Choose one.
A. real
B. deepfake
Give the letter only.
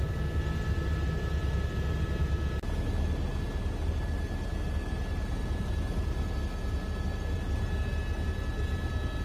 A